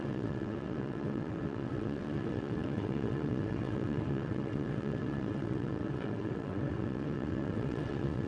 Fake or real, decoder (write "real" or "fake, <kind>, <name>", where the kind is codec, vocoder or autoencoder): fake, vocoder, WaveNeXt